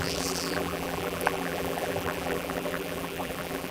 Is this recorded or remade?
remade